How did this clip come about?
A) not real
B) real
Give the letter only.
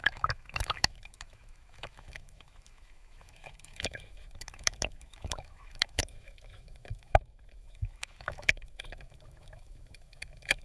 A